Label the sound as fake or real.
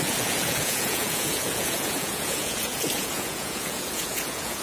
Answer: fake